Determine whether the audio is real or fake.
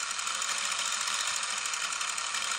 real